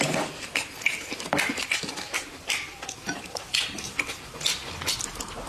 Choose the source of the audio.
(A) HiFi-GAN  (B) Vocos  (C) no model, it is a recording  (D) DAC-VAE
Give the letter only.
C